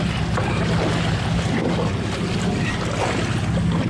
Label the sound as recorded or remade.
recorded